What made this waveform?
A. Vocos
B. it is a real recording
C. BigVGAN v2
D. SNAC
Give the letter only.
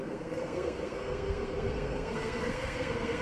D